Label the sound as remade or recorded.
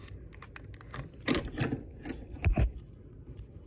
recorded